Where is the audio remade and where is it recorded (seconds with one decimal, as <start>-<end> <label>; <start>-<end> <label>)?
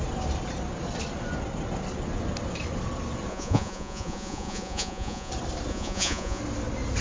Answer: 0.0-3.3 recorded; 3.3-5.3 remade; 5.3-5.7 recorded; 5.7-6.4 remade; 6.4-7.0 recorded